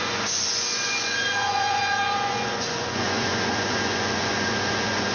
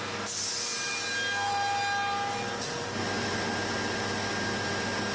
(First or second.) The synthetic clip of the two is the first